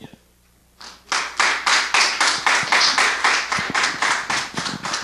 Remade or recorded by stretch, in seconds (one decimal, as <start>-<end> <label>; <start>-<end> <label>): 0.0-5.0 recorded